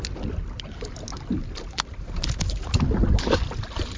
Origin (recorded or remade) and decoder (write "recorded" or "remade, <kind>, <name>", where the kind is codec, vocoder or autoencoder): recorded